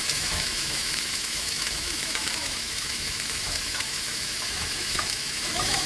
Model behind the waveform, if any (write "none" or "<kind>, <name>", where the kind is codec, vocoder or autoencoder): autoencoder, DAC-VAE